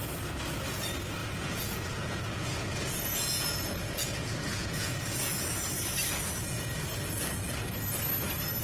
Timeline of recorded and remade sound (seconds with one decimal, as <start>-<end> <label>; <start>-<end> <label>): 0.0-1.2 recorded; 1.2-5.7 remade; 5.7-8.6 recorded